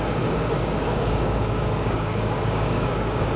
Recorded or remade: remade